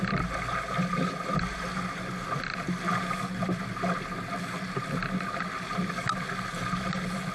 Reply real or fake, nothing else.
real